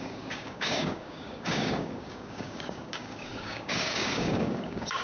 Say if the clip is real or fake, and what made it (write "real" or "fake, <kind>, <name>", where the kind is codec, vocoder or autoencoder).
fake, codec, DAC